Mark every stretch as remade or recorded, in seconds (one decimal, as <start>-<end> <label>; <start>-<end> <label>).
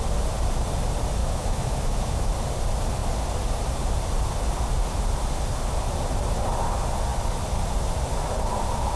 0.0-1.2 recorded; 1.2-2.3 remade; 2.3-9.0 recorded